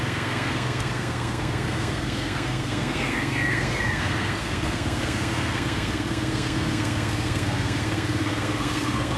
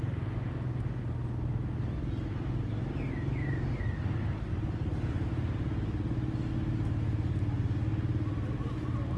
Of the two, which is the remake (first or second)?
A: first